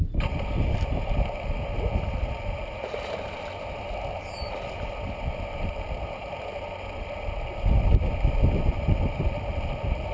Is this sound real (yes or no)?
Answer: yes